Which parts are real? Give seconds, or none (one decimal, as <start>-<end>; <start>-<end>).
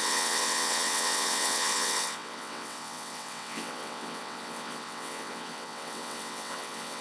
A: none